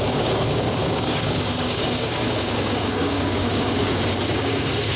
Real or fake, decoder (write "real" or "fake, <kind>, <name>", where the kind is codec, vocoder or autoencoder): fake, codec, DAC